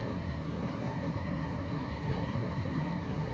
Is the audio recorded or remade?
remade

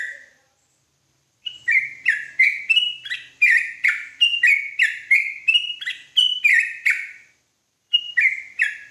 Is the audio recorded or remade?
remade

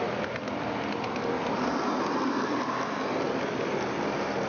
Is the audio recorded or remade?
recorded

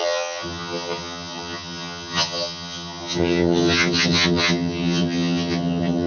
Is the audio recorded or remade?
remade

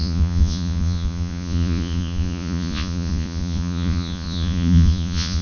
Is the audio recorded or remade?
remade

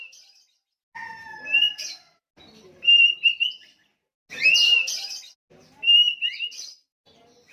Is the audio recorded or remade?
recorded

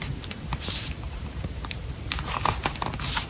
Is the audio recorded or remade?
remade